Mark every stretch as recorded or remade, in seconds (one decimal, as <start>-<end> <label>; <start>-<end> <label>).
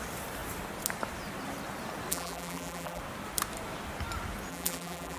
0.0-2.1 recorded; 2.1-3.0 remade; 3.0-4.5 recorded; 4.5-5.2 remade